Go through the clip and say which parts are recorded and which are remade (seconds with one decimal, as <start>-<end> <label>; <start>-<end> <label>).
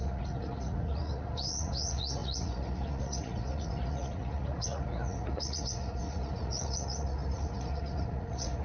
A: 0.0-8.6 remade